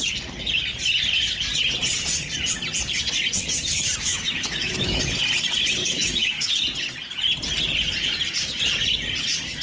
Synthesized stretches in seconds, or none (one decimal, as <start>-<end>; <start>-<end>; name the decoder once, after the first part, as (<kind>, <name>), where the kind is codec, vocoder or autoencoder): 4.1-5.0 (autoencoder, DAC-VAE); 5.8-6.5